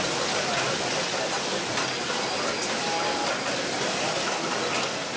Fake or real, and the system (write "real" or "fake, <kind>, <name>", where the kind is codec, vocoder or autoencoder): real